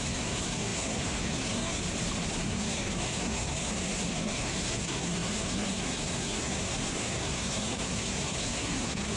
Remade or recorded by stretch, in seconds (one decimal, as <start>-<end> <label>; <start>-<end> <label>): 0.0-1.8 remade; 1.8-2.3 recorded; 2.3-9.2 remade